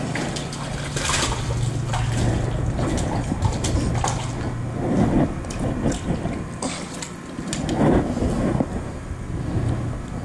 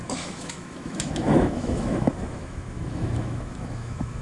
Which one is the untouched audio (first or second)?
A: first